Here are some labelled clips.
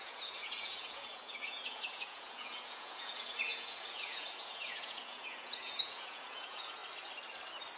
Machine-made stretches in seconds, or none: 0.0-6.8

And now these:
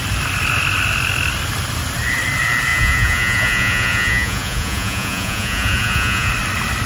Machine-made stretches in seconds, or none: 2.7-6.3

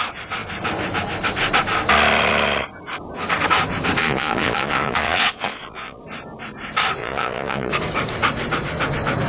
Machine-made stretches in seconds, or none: 4.0-6.0; 7.0-7.7

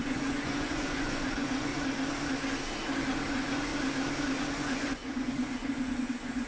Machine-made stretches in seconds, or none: 0.0-1.7; 3.3-3.7; 4.4-6.5

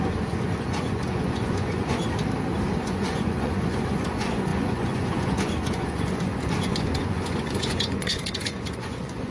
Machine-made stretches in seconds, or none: 0.0-2.0; 2.8-9.3

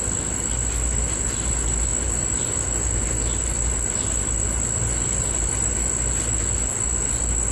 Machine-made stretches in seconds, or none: none

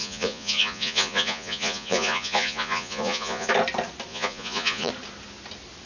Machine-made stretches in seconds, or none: 0.0-3.5; 4.1-4.9

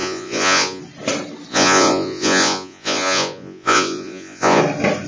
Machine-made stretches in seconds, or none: 0.0-0.8; 1.5-4.6